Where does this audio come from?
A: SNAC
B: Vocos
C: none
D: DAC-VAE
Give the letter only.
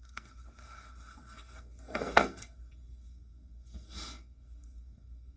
A